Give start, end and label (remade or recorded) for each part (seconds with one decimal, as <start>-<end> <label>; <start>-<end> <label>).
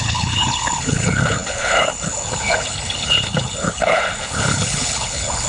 0.0-5.5 remade